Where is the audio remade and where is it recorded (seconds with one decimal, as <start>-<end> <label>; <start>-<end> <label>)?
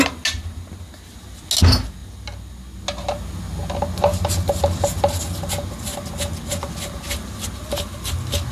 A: 0.0-8.5 recorded